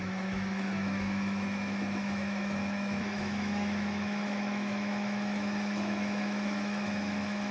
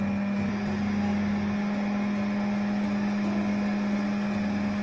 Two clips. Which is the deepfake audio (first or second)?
first